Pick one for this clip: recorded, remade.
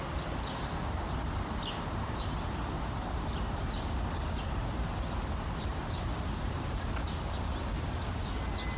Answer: recorded